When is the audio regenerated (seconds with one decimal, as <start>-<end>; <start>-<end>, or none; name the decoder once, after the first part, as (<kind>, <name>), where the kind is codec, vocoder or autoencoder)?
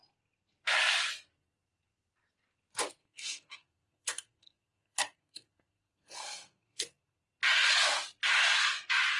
3.0-7.2 (codec, SNAC)